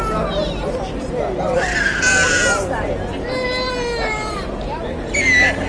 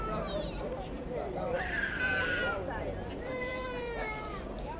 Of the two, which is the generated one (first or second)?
second